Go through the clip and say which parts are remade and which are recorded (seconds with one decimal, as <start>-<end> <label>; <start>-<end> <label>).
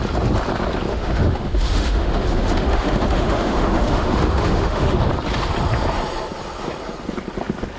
0.0-0.9 recorded; 0.9-5.1 remade; 5.1-7.8 recorded